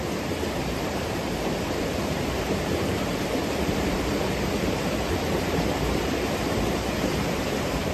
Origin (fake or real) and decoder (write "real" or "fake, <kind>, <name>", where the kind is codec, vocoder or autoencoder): fake, vocoder, BigVGAN v2